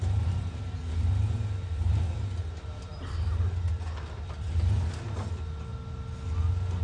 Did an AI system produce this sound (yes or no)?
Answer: no